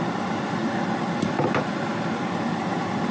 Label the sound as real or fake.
real